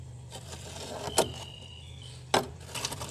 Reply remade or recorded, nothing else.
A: recorded